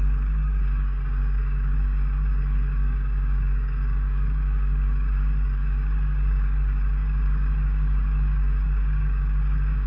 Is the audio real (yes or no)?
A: no